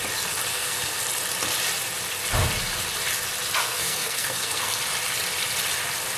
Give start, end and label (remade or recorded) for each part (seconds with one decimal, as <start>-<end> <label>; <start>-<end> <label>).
0.0-0.5 recorded; 0.5-1.0 remade; 1.0-3.6 recorded; 3.6-4.8 remade; 4.8-6.2 recorded